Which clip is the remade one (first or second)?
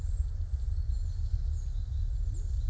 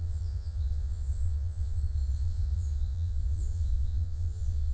second